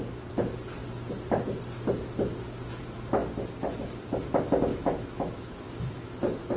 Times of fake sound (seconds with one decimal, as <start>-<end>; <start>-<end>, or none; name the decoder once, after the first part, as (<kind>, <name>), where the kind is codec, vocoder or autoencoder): 4.7-6.1 (autoencoder, DAC-VAE)